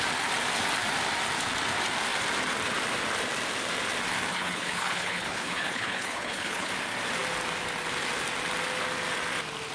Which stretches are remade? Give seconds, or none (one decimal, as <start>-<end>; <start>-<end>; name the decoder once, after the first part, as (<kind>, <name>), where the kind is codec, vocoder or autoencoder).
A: 4.3-6.7 (codec, HILCodec)